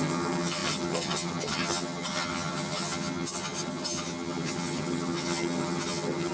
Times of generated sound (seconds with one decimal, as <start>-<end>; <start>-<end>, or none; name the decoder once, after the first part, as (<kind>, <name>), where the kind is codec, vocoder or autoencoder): 0.0-6.3 (vocoder, HiFi-GAN)